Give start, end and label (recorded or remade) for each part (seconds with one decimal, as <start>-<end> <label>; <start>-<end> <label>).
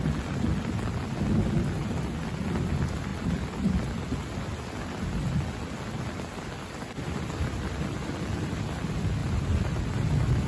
0.0-3.1 recorded; 3.1-4.0 remade; 4.0-9.2 recorded; 9.2-10.1 remade; 10.1-10.5 recorded